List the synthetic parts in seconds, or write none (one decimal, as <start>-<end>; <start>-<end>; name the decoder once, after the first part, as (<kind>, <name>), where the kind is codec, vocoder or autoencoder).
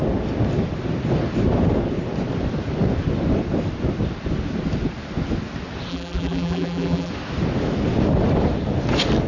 5.9-7.1 (vocoder, BigVGAN v2)